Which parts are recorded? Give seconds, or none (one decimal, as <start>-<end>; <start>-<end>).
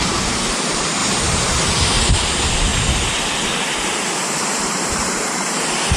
1.0-2.1; 2.7-3.6